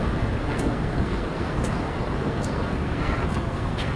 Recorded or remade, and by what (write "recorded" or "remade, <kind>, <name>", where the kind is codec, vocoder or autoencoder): remade, codec, SNAC